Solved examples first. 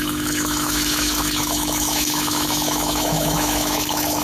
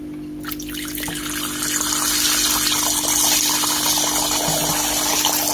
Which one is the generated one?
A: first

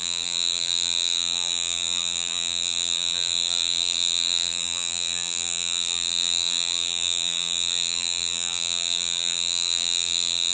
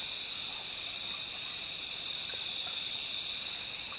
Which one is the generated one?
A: first